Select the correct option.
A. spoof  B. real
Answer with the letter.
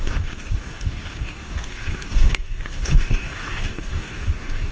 A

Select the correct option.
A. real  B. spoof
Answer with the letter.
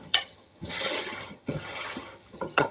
B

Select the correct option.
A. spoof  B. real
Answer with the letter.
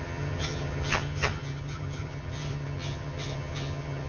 A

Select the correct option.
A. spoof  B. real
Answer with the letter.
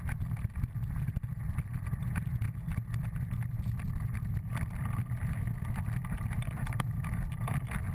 B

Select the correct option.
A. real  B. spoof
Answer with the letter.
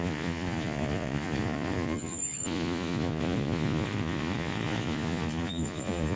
B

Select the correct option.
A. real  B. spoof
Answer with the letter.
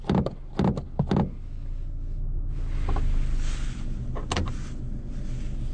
A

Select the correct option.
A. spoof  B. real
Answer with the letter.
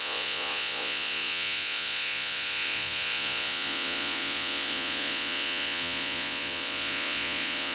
A